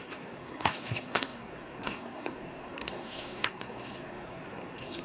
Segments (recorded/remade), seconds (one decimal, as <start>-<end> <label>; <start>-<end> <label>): 0.0-5.0 remade